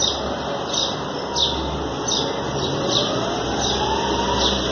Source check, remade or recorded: recorded